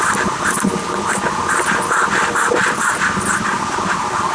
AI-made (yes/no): no